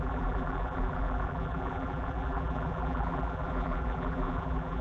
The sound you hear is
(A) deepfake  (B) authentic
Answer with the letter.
A